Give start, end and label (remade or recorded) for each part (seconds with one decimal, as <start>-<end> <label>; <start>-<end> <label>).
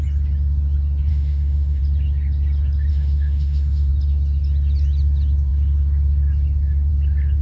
0.0-1.1 recorded; 1.1-1.8 remade; 1.8-2.9 recorded; 2.9-3.9 remade; 3.9-7.4 recorded